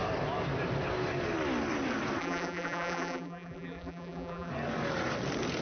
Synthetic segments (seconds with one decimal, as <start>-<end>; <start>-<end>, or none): 2.2-4.5